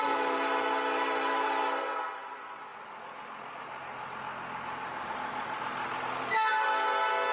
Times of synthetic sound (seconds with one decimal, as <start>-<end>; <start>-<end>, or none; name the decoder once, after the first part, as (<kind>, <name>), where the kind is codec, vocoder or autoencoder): none